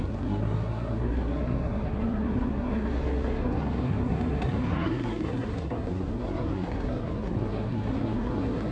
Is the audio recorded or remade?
remade